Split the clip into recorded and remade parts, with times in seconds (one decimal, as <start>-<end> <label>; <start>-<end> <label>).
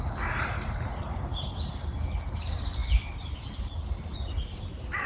0.0-5.1 recorded